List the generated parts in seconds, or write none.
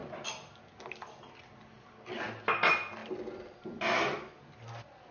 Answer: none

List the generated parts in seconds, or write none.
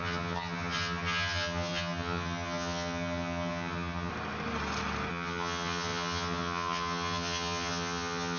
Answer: 0.0-4.1 (vocoder, HiFi-GAN); 5.1-8.4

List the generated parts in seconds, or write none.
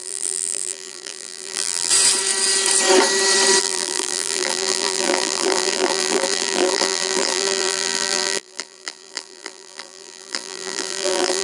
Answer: 0.0-1.9 (vocoder, BigVGAN v2); 3.6-11.4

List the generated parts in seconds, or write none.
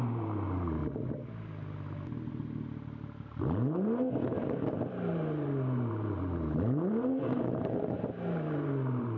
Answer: 0.0-0.8 (vocoder, BigVGAN v2); 2.3-9.2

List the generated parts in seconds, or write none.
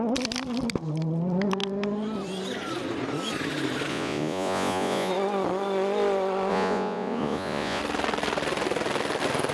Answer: 3.9-5.1 (vocoder, Vocos); 6.5-7.8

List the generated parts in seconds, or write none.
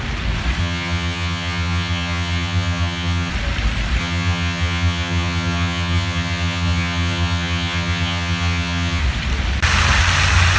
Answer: 0.6-3.3 (vocoder, HiFi-GAN); 4.0-9.0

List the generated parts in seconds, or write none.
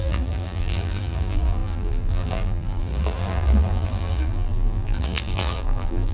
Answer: 0.0-6.1 (vocoder, BigVGAN v2)